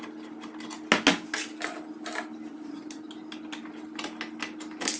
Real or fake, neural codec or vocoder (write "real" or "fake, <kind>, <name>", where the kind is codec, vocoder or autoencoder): real